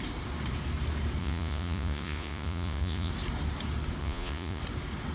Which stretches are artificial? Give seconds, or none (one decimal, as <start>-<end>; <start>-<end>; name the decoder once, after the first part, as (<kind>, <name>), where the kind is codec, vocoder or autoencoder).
1.2-3.1 (vocoder, Vocos); 4.0-4.6